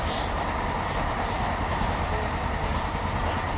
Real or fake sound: real